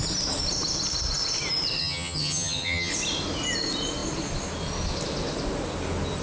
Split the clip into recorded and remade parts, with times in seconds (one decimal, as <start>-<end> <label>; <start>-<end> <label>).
0.0-1.8 recorded; 1.8-2.9 remade; 2.9-6.2 recorded